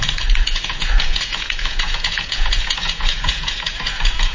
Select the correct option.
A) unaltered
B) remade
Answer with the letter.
B